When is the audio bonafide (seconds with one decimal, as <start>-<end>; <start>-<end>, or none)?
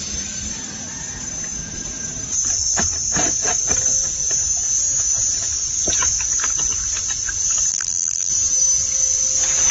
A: 0.0-7.7; 8.3-9.7